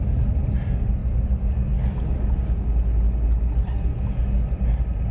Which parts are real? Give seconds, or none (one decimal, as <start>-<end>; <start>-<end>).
0.0-5.1